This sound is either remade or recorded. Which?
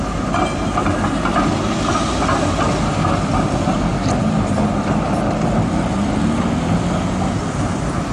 recorded